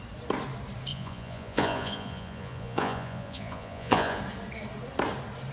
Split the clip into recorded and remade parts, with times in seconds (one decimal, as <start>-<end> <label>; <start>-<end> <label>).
0.0-0.9 recorded; 0.9-4.2 remade; 4.2-5.5 recorded